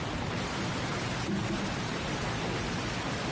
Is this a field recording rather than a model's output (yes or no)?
yes